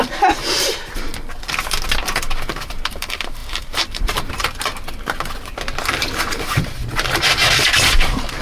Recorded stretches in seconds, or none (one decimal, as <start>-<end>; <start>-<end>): 1.1-2.5; 4.7-6.3